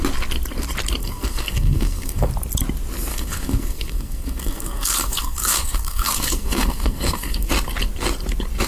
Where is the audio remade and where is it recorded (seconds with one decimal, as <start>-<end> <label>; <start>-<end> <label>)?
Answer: 0.0-1.0 recorded; 1.0-2.3 remade; 2.3-3.1 recorded; 3.1-7.5 remade; 7.5-8.7 recorded